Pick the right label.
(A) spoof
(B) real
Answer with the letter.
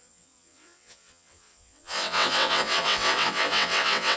A